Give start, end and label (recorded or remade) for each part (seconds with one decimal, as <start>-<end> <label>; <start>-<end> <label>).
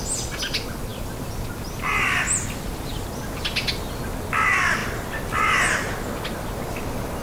0.0-7.2 recorded